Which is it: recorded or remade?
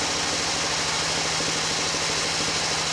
recorded